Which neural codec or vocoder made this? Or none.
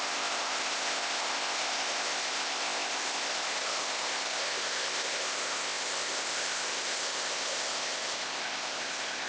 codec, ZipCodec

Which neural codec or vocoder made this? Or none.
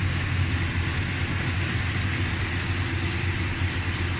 none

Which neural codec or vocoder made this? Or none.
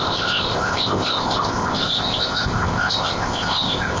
codec, ZipCodec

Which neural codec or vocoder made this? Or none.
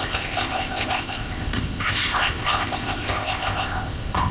codec, ZipCodec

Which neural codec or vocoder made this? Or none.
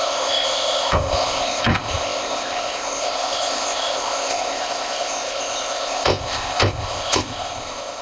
codec, ZipCodec